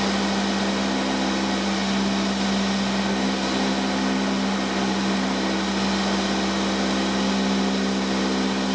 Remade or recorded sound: recorded